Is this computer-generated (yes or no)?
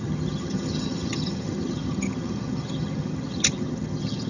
yes